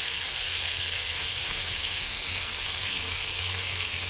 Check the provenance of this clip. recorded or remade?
remade